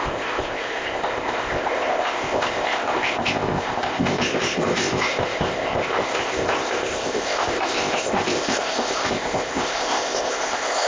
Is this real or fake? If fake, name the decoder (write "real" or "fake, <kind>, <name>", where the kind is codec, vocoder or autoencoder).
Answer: fake, codec, ZipCodec